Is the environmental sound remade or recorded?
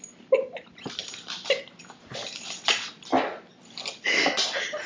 recorded